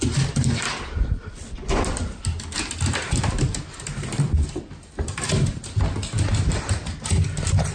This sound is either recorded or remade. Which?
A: recorded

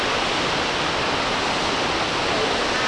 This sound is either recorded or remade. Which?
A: recorded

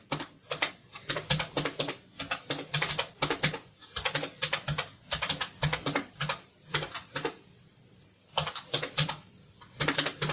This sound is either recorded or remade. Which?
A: recorded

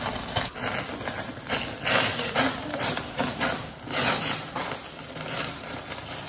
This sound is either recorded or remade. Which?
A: recorded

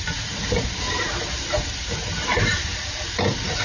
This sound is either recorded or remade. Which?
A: remade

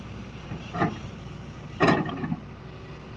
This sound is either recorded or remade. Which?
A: recorded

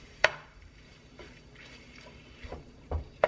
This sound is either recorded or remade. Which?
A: remade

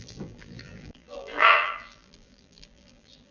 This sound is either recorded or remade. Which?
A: remade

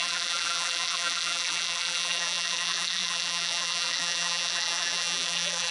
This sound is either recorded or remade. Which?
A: remade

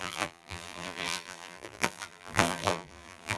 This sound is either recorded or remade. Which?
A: remade